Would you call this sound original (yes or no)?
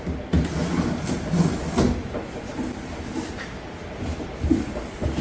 yes